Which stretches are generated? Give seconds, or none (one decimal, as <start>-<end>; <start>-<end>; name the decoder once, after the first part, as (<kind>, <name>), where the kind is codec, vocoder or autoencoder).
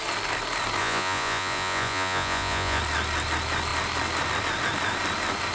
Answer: 0.8-2.8 (vocoder, Vocos)